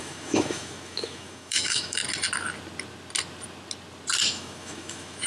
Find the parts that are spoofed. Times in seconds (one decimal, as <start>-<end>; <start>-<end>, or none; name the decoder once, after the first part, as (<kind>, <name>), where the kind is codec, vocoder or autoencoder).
0.0-2.0 (autoencoder, DAC-VAE); 4.3-5.3